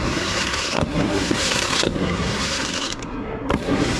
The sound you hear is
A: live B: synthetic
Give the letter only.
B